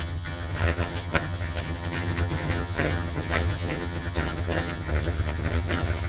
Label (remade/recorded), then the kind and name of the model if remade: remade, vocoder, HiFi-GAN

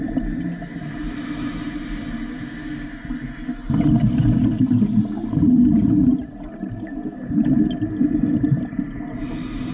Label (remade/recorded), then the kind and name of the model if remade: recorded